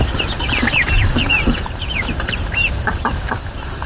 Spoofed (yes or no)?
yes